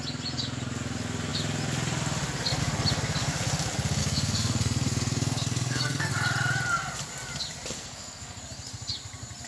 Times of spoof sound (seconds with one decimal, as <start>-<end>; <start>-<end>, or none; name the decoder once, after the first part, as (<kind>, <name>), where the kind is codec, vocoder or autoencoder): 4.0-6.1 (codec, SNAC); 7.7-8.4